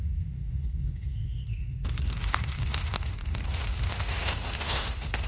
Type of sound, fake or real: fake